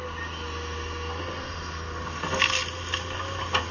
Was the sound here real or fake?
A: real